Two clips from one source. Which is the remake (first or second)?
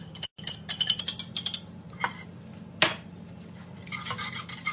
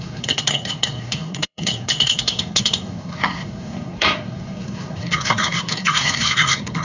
second